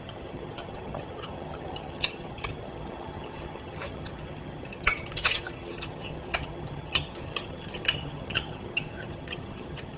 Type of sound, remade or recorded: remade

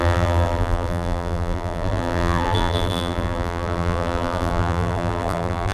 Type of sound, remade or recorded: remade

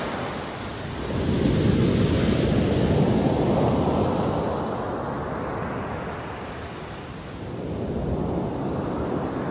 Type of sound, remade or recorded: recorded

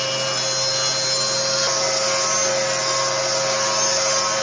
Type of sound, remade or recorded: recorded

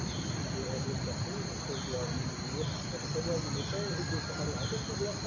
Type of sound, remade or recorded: recorded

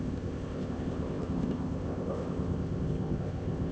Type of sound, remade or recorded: remade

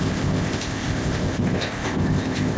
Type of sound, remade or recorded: remade